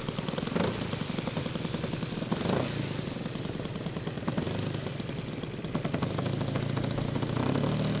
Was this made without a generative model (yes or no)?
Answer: yes